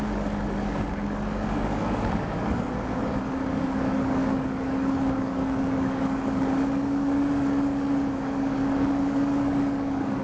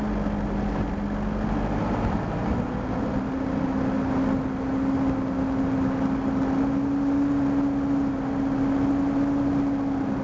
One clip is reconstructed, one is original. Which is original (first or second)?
second